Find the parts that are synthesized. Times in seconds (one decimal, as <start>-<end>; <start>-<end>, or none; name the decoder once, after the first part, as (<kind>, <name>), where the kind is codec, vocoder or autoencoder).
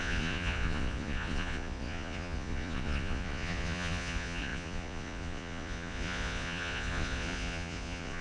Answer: 0.0-8.2 (vocoder, Vocos)